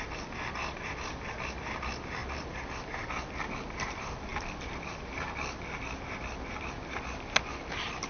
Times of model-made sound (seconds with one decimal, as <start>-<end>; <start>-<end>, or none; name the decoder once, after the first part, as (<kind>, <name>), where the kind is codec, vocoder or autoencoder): none